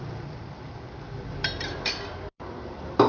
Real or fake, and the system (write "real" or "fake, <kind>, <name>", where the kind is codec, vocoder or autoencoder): fake, vocoder, BigVGAN v2